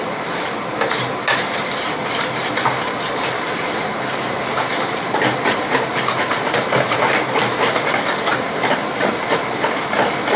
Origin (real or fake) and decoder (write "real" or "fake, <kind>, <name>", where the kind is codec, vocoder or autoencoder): fake, vocoder, BigVGAN v2